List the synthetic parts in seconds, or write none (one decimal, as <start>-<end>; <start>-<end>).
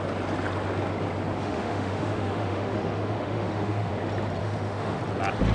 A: 1.4-3.9; 4.4-5.0